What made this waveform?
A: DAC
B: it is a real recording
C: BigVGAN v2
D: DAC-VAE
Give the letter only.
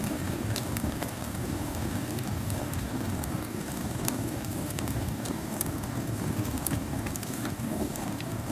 A